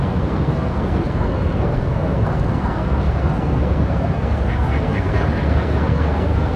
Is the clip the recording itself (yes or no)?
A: no